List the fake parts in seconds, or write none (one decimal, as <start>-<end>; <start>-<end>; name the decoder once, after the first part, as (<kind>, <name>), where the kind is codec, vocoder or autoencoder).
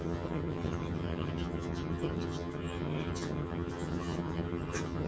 0.0-5.1 (vocoder, HiFi-GAN)